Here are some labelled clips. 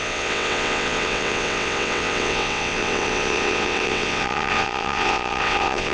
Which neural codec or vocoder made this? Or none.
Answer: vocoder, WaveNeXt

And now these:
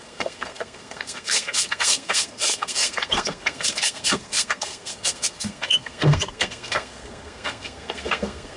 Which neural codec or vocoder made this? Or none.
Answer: codec, SNAC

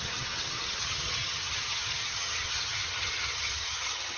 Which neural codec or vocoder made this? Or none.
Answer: vocoder, HiFi-GAN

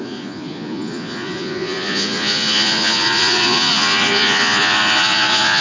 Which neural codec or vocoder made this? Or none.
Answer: vocoder, Vocos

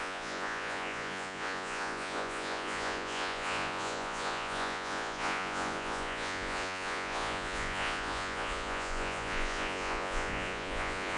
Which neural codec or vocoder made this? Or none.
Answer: vocoder, Vocos